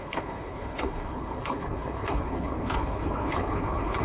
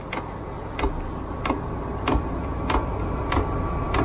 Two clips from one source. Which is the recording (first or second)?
second